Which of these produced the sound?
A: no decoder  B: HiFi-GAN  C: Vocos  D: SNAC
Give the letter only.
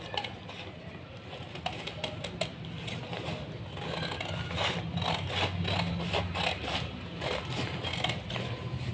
A